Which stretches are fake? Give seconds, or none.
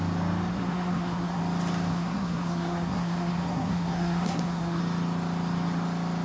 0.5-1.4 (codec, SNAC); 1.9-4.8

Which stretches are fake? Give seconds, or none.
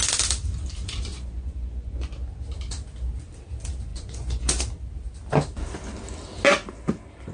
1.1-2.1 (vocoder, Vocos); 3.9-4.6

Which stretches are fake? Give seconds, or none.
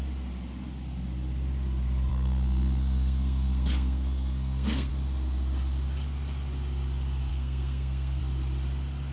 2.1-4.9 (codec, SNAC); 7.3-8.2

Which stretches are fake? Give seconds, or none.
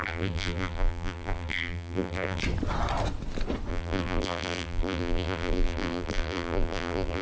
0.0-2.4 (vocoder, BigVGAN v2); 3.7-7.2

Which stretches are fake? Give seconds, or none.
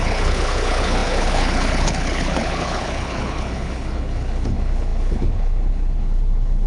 0.0-6.7 (codec, HILCodec)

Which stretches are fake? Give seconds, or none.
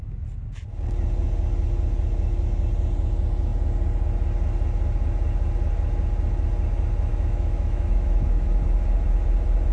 7.1-8.6 (autoencoder, DAC-VAE)